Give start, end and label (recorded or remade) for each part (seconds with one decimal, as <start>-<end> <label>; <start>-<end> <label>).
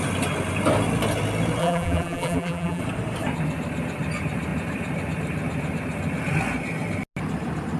0.0-1.6 recorded; 1.6-2.8 remade; 2.8-7.8 recorded